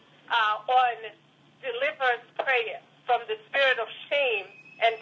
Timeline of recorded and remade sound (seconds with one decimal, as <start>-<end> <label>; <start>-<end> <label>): 0.0-5.0 recorded